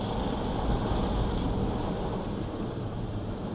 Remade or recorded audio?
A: recorded